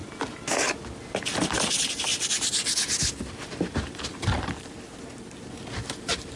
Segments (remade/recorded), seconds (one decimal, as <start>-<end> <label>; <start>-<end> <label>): 0.0-6.4 recorded